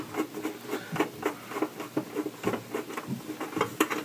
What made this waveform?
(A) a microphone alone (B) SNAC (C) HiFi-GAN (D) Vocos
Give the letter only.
A